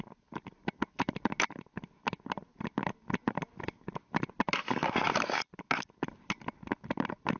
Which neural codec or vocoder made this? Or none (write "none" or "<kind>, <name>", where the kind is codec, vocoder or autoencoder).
none